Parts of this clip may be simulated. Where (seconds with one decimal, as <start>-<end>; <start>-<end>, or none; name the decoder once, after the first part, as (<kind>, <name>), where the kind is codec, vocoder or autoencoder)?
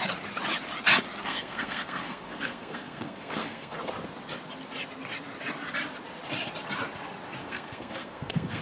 1.2-3.9 (codec, SNAC); 7.4-8.6